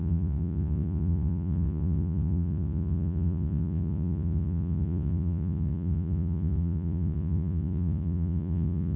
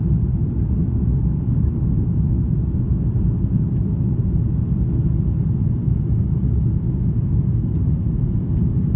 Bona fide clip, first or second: second